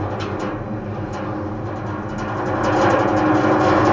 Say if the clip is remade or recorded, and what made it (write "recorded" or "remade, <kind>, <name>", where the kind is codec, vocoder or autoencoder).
recorded